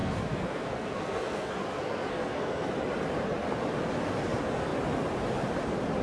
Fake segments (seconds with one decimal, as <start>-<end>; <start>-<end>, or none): 0.0-2.7